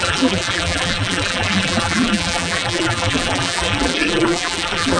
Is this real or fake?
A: fake